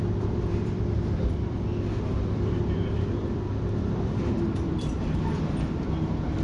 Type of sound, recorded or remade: remade